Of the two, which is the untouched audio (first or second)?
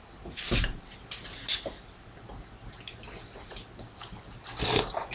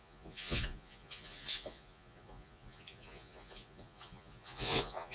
first